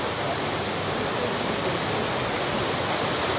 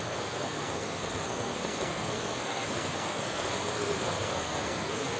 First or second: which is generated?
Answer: second